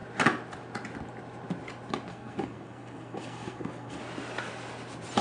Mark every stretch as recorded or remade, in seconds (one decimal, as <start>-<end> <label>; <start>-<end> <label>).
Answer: 0.0-2.1 recorded; 2.1-4.0 remade; 4.0-5.2 recorded